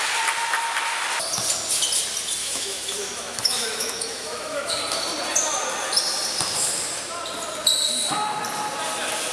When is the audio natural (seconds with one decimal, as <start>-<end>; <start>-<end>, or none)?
0.0-2.4; 4.8-9.3